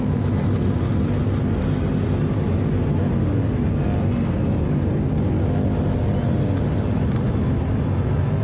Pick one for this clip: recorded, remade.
recorded